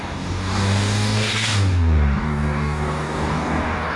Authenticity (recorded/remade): remade